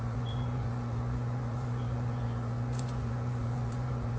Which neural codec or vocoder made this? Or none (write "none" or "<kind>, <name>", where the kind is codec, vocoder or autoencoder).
vocoder, Vocos